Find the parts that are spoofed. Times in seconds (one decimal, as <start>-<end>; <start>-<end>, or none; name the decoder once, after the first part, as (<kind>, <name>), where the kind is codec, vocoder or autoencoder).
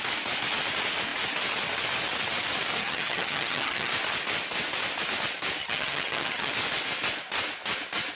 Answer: 2.8-3.9 (vocoder, HiFi-GAN); 5.6-6.5